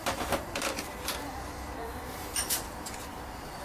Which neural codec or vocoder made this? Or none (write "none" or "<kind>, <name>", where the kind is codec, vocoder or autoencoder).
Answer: vocoder, BigVGAN v2